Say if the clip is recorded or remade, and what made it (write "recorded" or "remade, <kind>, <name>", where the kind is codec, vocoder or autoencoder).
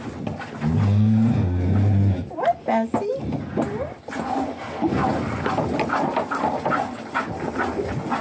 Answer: recorded